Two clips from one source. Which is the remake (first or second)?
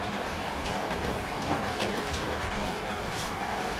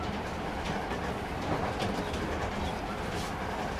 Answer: first